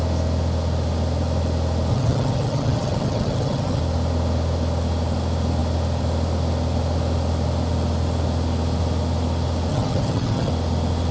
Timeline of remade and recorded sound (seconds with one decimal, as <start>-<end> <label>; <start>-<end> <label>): 0.0-1.9 recorded; 1.9-3.8 remade; 3.8-9.7 recorded; 9.7-10.5 remade; 10.5-11.1 recorded